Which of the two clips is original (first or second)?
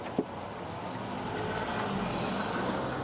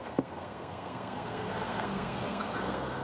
first